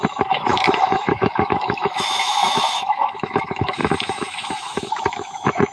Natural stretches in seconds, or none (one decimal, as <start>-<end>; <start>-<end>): none